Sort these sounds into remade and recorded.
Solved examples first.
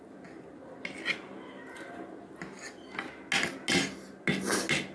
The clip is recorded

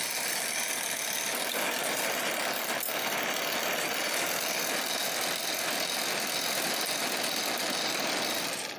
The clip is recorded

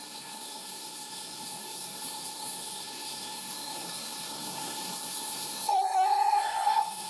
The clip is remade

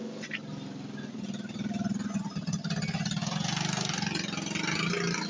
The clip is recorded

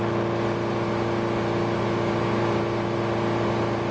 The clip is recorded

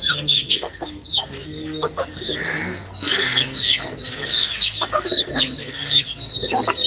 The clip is remade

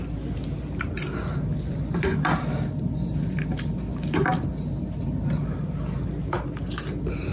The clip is recorded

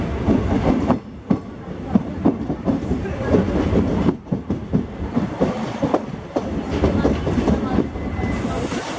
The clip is recorded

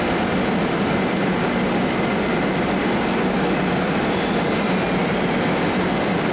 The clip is recorded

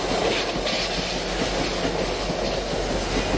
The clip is recorded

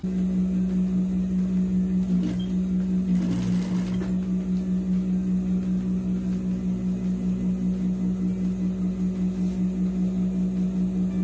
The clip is recorded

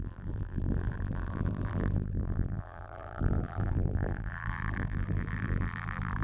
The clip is remade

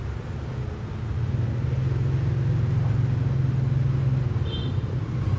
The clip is recorded